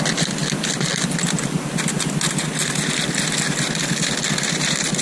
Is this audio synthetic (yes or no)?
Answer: no